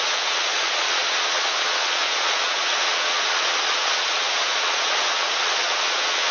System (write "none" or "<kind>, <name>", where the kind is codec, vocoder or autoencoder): vocoder, Vocos